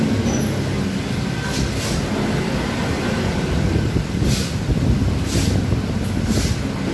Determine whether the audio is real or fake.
real